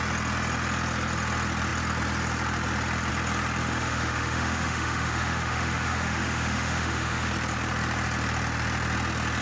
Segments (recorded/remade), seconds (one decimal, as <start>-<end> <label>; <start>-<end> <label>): 0.0-3.6 recorded; 3.6-7.3 remade; 7.3-9.4 recorded